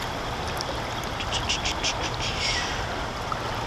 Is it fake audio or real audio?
real